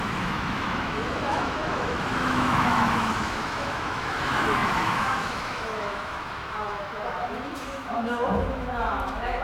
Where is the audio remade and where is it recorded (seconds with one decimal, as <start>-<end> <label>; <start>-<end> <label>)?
0.0-9.4 remade